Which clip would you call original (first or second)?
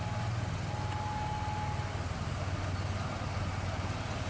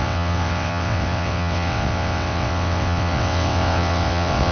first